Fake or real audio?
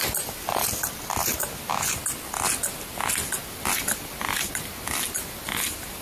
real